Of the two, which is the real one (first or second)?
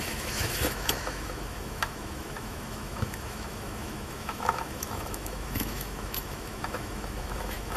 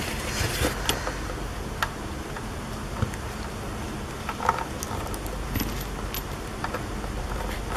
second